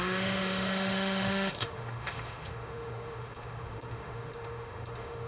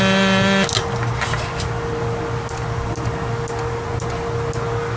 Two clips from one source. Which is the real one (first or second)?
second